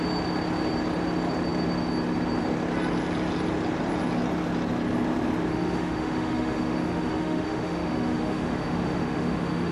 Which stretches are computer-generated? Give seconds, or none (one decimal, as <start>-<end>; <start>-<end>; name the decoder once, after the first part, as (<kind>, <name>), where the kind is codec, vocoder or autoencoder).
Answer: 5.5-9.7 (autoencoder, DAC-VAE)

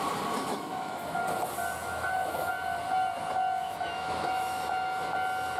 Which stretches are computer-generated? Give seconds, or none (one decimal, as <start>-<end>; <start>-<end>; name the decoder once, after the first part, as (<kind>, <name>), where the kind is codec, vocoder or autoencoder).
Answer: 0.5-1.2 (autoencoder, DAC-VAE); 1.8-2.5; 3.6-5.0